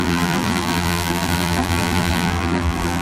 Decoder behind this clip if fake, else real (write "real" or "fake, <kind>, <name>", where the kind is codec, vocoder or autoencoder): fake, vocoder, BigVGAN v2